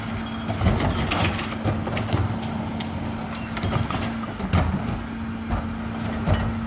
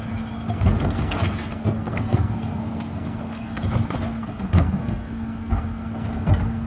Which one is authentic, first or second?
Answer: first